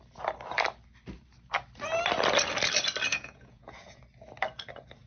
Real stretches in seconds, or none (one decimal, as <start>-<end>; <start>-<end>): 0.0-3.1; 4.0-5.1